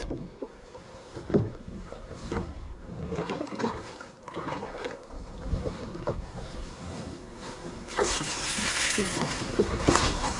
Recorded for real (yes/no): no